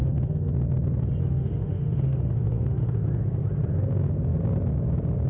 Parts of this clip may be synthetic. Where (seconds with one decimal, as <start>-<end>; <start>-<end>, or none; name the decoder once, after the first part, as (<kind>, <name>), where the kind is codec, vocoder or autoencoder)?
0.0-0.5 (autoencoder, DAC-VAE); 1.2-3.0